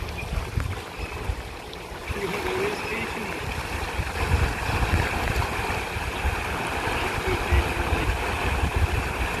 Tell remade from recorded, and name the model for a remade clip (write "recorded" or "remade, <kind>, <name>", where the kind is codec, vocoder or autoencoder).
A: recorded